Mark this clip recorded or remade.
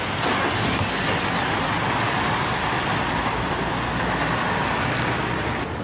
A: recorded